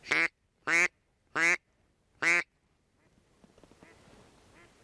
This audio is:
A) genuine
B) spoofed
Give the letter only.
A